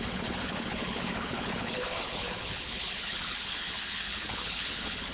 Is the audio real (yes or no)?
no